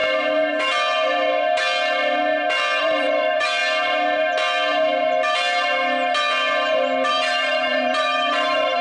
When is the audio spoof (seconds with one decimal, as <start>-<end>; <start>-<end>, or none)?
2.8-3.6; 7.1-8.8